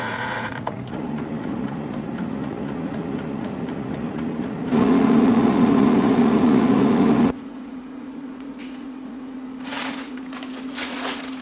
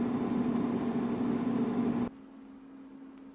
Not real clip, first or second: first